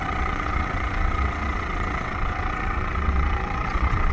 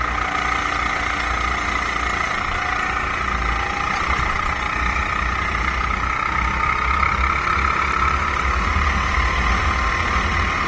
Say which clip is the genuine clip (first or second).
second